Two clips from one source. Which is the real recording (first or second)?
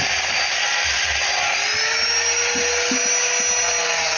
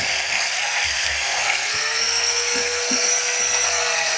first